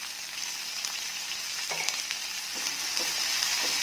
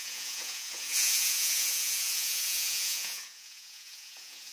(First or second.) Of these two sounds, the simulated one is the second